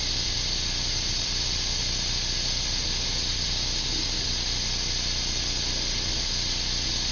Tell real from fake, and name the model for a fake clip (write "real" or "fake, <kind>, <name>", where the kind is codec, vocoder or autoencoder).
fake, vocoder, BigVGAN v2